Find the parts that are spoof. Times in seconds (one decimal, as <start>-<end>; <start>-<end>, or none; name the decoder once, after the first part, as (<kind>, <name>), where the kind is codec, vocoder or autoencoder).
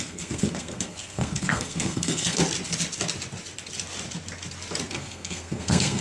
0.0-2.4 (codec, SNAC); 4.9-6.0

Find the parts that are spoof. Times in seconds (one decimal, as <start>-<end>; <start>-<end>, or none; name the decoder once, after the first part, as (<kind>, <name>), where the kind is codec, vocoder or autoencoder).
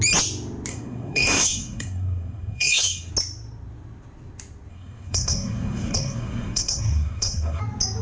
0.7-3.1 (codec, SNAC); 4.7-7.6